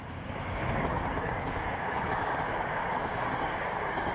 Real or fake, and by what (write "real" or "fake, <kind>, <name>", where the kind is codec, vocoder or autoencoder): fake, codec, DAC